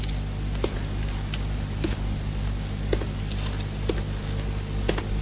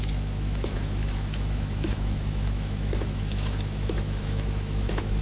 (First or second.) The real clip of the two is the first